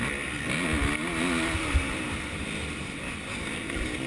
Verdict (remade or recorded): recorded